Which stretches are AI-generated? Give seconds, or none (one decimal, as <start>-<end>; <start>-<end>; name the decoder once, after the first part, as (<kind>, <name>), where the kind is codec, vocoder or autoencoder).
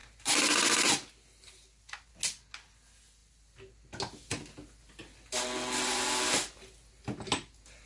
none